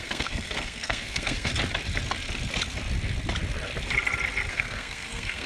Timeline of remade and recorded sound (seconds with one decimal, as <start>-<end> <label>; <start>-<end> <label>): 0.0-1.5 remade; 1.5-4.5 recorded; 4.5-5.5 remade